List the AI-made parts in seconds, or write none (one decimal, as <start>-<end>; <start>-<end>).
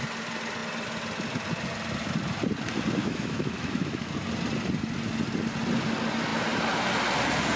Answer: 3.0-4.1